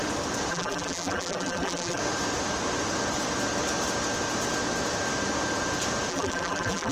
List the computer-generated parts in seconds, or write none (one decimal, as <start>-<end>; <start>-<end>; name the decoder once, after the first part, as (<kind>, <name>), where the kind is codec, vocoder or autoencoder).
0.5-2.0 (vocoder, BigVGAN v2); 6.1-6.9

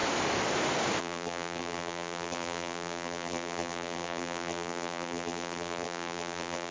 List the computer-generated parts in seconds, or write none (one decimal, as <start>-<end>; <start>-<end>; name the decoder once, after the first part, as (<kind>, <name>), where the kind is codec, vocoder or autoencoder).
1.0-6.7 (vocoder, BigVGAN v2)

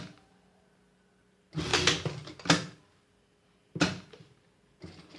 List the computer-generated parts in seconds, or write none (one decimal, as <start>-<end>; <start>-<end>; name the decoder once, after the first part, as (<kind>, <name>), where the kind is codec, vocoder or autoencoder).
none

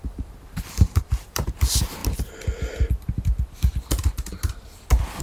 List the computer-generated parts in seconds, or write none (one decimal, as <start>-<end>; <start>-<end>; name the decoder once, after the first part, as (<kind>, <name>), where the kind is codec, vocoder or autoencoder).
0.0-1.5 (vocoder, BigVGAN v2)

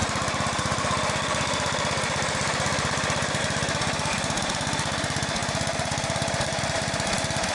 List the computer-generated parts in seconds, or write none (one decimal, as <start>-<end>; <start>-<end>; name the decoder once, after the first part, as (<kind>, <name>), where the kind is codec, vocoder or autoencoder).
0.0-7.5 (vocoder, BigVGAN v2)

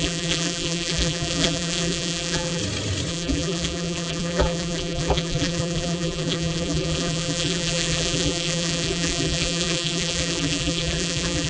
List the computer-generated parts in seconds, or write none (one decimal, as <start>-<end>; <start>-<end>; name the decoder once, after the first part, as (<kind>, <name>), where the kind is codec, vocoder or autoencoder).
0.0-2.6 (vocoder, BigVGAN v2); 3.1-11.5

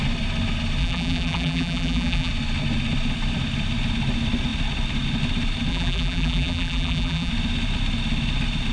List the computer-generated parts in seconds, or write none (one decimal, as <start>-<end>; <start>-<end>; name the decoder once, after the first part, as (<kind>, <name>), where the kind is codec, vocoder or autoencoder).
0.8-2.3 (vocoder, BigVGAN v2); 5.7-7.3